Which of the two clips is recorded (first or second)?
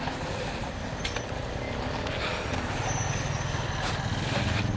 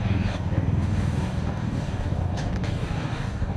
first